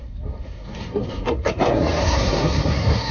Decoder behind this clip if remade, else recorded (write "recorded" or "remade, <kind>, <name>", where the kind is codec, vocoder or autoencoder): remade, codec, SNAC